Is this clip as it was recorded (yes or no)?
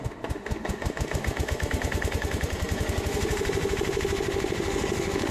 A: no